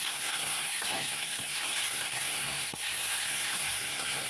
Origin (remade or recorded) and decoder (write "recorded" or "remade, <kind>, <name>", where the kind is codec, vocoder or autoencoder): remade, codec, SNAC